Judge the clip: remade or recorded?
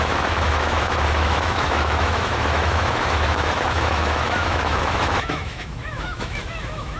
remade